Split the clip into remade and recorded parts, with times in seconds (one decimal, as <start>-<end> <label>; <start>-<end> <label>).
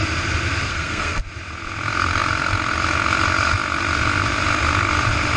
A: 0.0-0.7 recorded; 0.7-1.2 remade; 1.2-5.4 recorded